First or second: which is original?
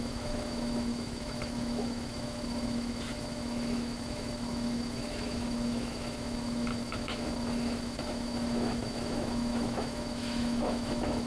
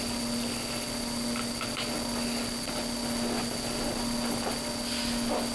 second